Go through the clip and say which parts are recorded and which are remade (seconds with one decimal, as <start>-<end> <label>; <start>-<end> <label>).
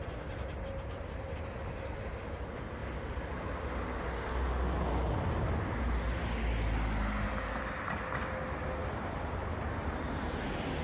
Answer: 0.0-10.8 recorded